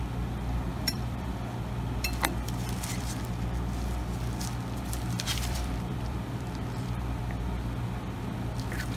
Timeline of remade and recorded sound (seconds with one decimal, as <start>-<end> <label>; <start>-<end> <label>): 0.0-0.7 recorded; 0.7-1.3 remade; 1.3-5.3 recorded; 5.3-7.2 remade; 7.2-9.0 recorded